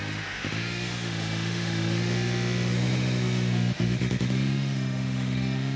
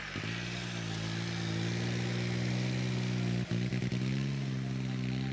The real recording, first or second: second